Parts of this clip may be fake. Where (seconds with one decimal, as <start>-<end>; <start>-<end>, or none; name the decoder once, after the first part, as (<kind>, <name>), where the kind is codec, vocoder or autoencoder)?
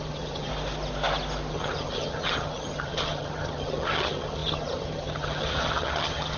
0.0-0.5 (vocoder, HiFi-GAN); 1.5-6.4